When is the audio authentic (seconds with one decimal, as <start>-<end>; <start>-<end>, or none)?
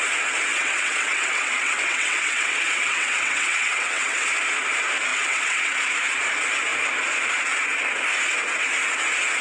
0.0-0.5; 4.3-5.1; 5.8-9.4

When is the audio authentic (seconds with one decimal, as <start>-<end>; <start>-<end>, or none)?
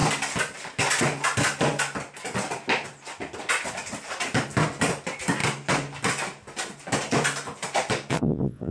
0.0-8.1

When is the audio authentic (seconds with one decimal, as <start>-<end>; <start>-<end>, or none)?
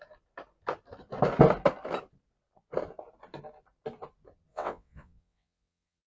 0.0-4.5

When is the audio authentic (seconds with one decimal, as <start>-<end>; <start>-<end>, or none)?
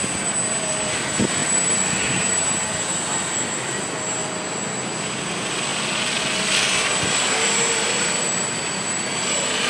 0.0-9.7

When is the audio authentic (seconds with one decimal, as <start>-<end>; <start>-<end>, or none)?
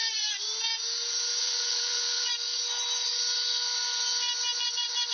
0.0-1.4; 2.3-5.1